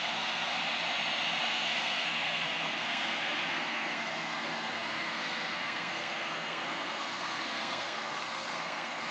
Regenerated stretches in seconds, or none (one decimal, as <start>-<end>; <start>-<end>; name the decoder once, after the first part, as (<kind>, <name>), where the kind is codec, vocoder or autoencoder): 0.0-0.5 (codec, SNAC); 1.4-9.1